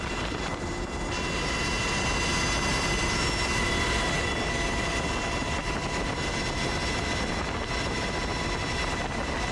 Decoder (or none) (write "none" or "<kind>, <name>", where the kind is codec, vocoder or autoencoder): none